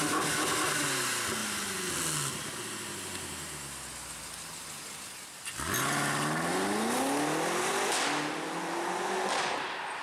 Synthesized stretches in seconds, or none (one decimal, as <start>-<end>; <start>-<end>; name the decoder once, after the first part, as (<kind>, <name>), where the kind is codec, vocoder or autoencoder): none